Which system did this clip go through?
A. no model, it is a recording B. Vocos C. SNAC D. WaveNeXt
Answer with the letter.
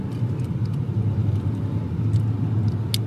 A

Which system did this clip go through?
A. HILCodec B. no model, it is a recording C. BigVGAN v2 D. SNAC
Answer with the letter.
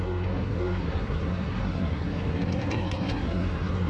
D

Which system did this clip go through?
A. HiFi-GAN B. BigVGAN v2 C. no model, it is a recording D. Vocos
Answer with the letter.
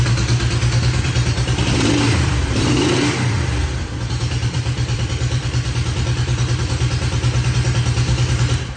B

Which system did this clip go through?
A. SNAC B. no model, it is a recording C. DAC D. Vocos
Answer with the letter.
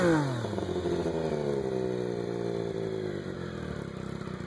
B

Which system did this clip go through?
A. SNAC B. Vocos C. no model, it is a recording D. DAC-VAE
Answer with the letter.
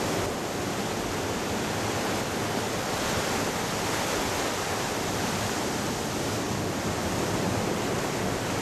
C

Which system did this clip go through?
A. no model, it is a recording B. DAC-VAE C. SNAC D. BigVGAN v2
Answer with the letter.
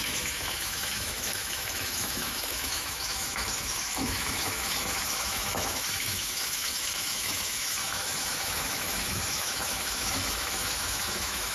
B